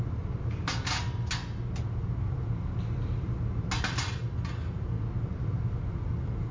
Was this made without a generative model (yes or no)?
yes